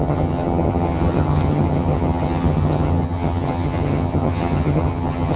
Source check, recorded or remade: remade